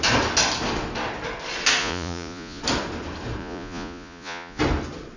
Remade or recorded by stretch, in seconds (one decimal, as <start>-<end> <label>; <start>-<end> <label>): 0.0-1.8 recorded; 1.8-2.6 remade; 2.6-3.4 recorded; 3.4-4.6 remade; 4.6-5.2 recorded